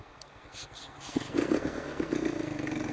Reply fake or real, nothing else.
fake